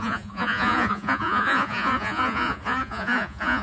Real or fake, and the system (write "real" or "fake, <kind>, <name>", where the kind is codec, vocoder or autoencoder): fake, vocoder, Vocos